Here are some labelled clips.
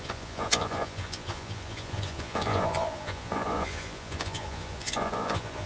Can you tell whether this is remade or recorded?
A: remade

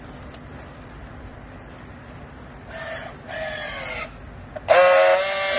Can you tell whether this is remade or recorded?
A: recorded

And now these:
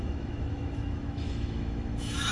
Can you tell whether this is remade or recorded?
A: remade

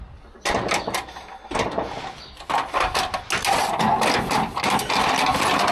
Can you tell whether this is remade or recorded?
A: recorded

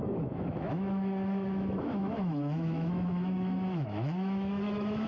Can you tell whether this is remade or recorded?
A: remade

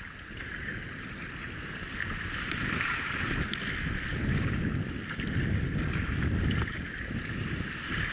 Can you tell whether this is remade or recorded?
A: recorded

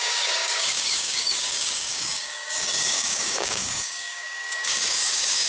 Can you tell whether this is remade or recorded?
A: remade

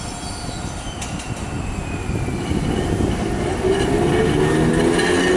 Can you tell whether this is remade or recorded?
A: recorded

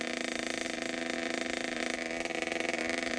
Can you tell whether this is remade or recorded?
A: recorded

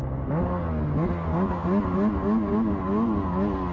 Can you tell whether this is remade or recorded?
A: recorded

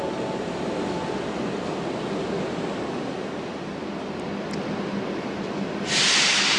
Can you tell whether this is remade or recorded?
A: recorded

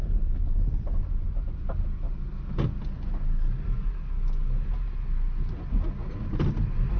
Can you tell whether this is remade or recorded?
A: recorded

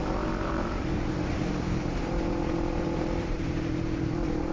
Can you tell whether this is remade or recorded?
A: remade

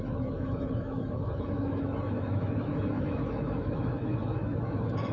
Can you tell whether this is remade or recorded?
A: remade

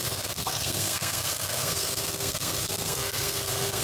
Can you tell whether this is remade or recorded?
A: remade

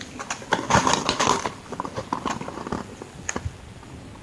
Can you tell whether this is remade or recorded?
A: remade